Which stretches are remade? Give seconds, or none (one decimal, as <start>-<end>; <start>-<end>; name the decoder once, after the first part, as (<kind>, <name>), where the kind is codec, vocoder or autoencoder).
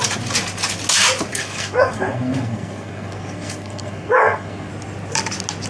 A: 1.3-4.7 (codec, SNAC)